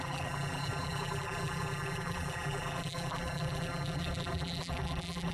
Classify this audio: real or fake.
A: fake